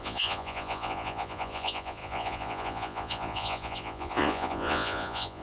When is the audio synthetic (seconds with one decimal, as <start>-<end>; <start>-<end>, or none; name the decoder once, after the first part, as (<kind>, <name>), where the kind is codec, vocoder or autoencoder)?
0.0-5.4 (vocoder, Vocos)